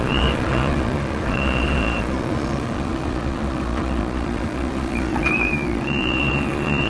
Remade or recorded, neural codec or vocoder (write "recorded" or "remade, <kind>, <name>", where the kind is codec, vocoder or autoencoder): remade, vocoder, Vocos